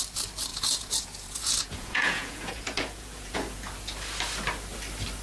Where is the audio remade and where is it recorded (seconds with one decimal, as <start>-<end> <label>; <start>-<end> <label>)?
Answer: 0.0-0.5 recorded; 0.5-3.6 remade; 3.6-5.2 recorded